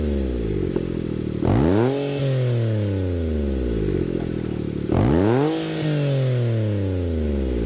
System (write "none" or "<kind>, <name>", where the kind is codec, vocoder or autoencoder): none